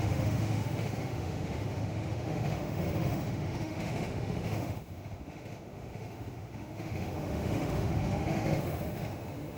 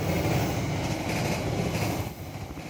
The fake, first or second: first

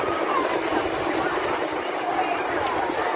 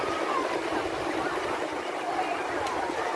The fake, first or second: second